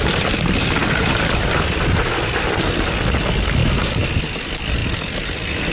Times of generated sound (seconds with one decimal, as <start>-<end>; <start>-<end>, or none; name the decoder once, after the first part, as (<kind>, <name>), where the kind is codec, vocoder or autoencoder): none